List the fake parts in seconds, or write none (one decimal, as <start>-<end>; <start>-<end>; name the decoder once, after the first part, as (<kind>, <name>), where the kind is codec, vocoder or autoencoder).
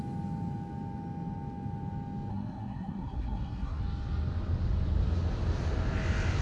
2.3-3.8 (codec, SNAC)